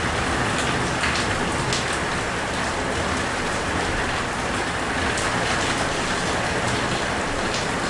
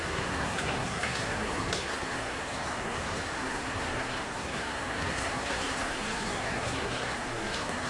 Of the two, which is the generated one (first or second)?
second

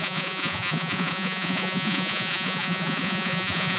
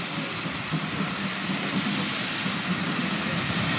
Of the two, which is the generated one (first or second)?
first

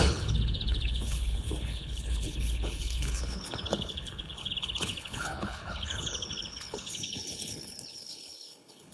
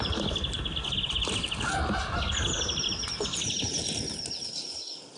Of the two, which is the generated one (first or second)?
first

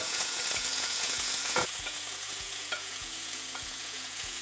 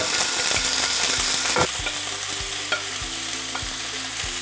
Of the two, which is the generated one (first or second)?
first